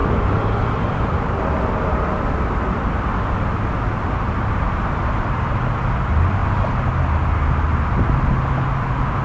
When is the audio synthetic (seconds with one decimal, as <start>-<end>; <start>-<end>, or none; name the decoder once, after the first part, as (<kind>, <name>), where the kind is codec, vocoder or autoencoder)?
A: none